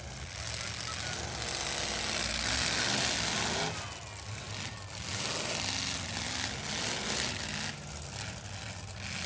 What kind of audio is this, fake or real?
real